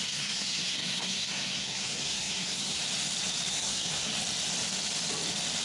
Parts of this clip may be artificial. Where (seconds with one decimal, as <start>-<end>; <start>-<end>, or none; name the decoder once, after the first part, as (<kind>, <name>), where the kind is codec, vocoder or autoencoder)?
0.0-2.8 (codec, SNAC); 3.5-4.1